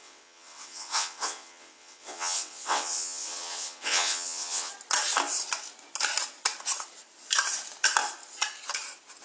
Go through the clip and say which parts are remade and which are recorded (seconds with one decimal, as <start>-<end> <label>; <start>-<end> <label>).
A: 0.0-4.7 remade; 4.7-9.2 recorded